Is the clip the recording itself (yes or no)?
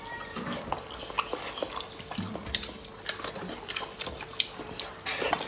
yes